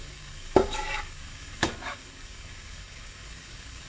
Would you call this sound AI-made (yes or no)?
yes